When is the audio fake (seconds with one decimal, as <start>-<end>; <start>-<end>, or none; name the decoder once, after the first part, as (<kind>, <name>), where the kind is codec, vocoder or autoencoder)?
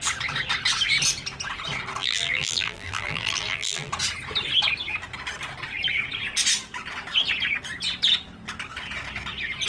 2.0-3.9 (vocoder, BigVGAN v2)